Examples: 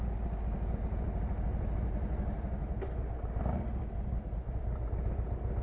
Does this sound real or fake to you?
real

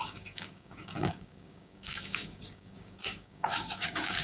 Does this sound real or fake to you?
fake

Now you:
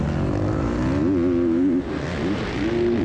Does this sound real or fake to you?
real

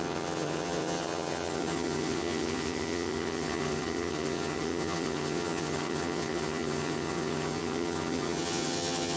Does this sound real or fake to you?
fake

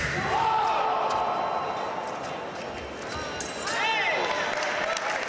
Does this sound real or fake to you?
real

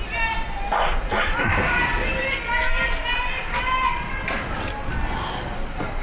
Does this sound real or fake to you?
real